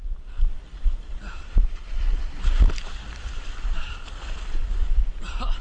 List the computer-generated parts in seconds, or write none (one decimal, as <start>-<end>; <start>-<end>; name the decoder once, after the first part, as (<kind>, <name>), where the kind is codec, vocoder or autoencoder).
none

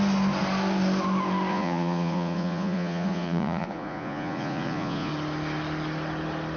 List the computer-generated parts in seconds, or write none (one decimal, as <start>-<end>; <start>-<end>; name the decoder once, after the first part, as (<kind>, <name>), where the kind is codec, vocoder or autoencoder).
1.5-5.1 (vocoder, Vocos)

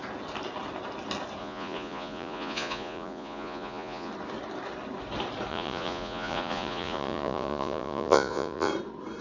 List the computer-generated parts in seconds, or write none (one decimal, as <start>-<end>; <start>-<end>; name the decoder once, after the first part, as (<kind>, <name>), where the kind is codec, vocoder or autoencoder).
1.4-4.1 (vocoder, Vocos); 5.5-8.7